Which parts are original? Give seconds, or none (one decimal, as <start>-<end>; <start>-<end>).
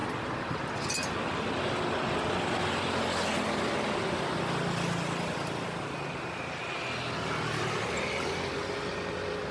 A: 0.0-9.5